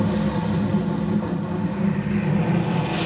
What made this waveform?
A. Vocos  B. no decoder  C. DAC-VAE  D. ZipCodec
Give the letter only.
B